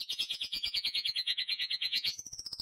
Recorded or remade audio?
remade